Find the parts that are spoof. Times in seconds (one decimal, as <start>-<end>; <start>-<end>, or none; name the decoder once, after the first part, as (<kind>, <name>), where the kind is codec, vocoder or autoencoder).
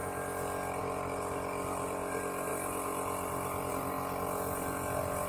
0.8-5.3 (vocoder, BigVGAN v2)